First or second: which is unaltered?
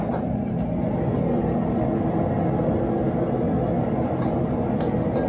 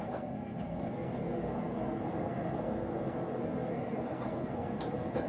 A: first